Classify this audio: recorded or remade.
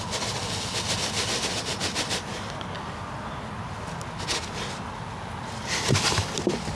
recorded